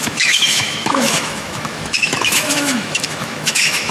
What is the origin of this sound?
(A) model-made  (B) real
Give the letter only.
A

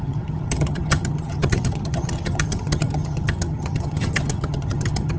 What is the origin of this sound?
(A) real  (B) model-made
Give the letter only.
B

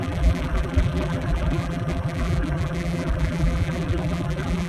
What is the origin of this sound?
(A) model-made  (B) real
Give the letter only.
A